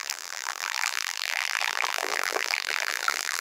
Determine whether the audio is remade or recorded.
remade